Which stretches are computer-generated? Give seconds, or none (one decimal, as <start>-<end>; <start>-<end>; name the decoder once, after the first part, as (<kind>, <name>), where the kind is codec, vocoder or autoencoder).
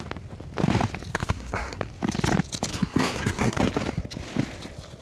1.1-1.8 (codec, SNAC); 2.7-3.6